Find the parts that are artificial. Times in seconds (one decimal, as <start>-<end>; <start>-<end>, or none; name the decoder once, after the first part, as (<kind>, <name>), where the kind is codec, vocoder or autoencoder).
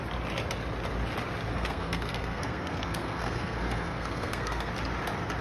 1.5-4.7 (codec, SNAC)